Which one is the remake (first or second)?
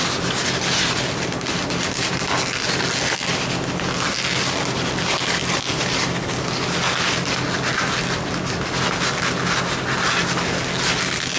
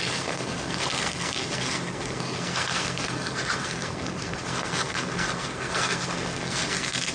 second